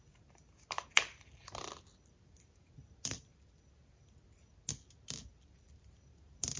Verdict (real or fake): real